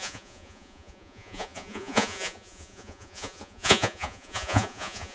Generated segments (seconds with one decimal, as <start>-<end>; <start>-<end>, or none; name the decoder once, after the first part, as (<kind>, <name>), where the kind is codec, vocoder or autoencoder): 0.0-5.1 (vocoder, Vocos)